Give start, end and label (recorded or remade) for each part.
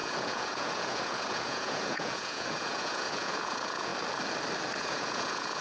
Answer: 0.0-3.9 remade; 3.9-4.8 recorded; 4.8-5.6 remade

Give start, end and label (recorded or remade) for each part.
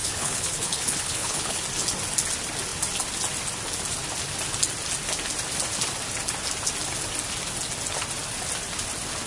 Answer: 0.0-1.6 remade; 1.6-9.3 recorded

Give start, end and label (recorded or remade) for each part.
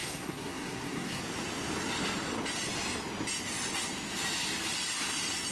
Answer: 0.0-1.2 remade; 1.2-5.5 recorded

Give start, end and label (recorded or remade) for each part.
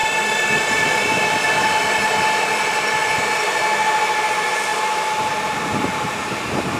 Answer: 0.0-6.8 recorded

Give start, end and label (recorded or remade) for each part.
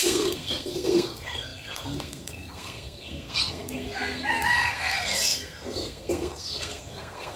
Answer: 0.0-7.4 remade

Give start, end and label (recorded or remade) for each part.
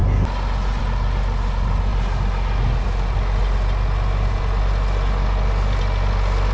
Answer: 0.0-6.5 recorded